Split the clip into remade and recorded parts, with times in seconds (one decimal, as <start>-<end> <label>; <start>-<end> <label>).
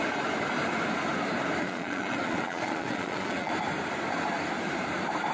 0.0-1.6 recorded; 1.6-3.5 remade; 3.5-5.3 recorded